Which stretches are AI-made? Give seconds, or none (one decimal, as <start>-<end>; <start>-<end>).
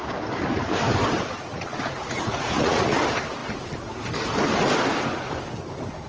1.4-3.0